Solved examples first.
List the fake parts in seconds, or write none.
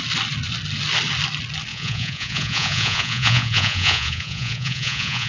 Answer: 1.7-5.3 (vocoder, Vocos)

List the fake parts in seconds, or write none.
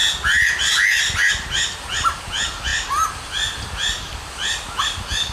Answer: none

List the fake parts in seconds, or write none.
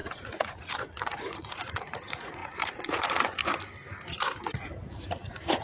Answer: 0.0-3.4 (vocoder, Vocos); 4.2-5.6